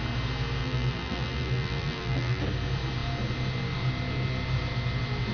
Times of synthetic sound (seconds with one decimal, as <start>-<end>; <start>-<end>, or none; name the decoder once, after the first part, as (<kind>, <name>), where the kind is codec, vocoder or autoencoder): 0.6-2.4 (vocoder, BigVGAN v2)